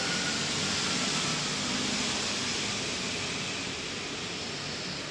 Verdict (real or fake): real